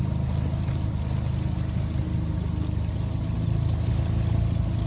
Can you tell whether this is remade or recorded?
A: recorded